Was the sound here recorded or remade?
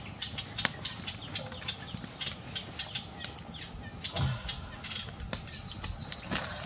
recorded